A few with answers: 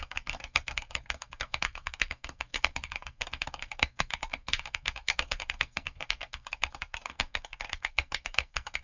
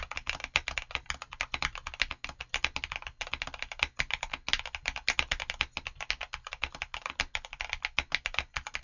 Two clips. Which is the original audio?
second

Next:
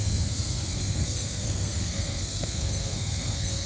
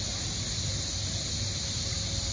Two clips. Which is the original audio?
second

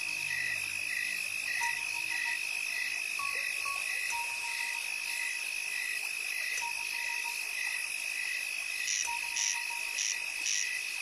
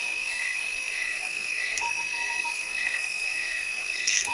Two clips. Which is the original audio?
first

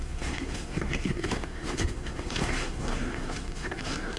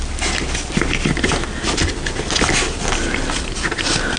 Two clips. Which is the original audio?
second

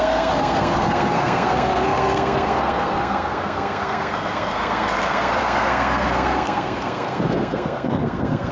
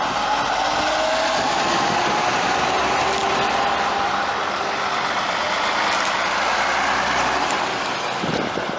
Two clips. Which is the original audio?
second